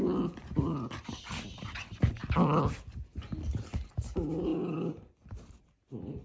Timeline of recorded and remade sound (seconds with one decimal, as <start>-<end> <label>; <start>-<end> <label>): 0.0-6.2 recorded